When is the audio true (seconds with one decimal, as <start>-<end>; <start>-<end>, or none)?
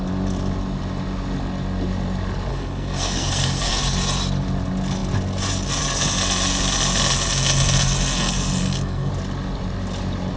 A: 0.0-2.5; 3.7-8.6; 9.1-10.4